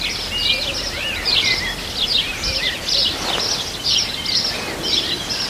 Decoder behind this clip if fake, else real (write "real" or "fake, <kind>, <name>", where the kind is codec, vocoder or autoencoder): real